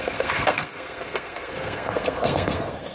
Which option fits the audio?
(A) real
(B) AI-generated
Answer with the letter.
B